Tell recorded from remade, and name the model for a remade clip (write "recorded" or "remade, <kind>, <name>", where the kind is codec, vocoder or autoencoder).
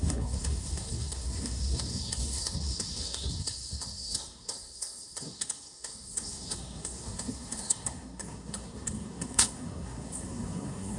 remade, codec, SNAC